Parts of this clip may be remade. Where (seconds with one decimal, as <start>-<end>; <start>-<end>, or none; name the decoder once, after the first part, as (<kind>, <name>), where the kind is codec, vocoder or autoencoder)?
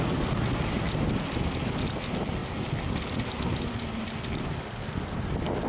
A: none